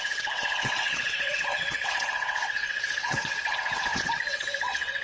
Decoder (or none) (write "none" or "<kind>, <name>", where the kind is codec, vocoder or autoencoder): vocoder, WaveNeXt